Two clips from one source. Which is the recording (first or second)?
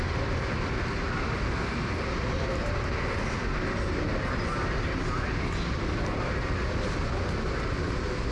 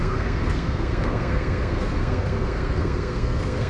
first